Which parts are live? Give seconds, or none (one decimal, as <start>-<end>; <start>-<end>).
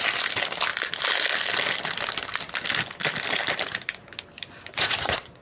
0.0-4.7